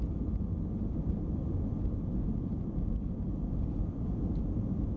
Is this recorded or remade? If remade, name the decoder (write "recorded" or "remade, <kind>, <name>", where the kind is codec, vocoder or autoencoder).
remade, vocoder, BigVGAN v2